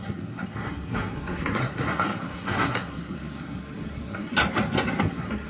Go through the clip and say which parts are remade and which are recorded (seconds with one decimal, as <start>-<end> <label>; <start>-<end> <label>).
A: 0.0-4.4 remade; 4.4-5.0 recorded; 5.0-5.5 remade